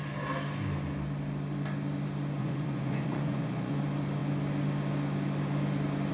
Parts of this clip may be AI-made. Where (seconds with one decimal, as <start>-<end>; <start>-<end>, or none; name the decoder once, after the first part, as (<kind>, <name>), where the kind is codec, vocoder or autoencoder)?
2.4-3.8 (vocoder, Vocos)